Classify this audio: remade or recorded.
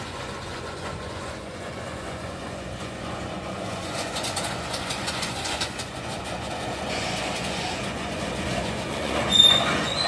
remade